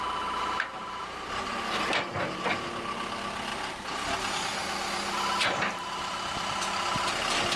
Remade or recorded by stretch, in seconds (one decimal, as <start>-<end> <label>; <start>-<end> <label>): 0.0-7.6 recorded